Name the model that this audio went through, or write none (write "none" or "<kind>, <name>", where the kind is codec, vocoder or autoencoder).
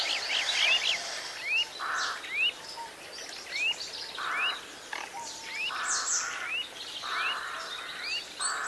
none